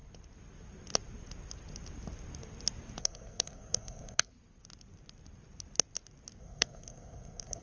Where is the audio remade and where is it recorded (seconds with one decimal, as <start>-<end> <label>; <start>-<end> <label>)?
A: 0.0-3.0 recorded; 3.0-4.3 remade; 4.3-6.4 recorded; 6.4-7.6 remade